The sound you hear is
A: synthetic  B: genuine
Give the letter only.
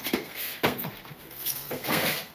A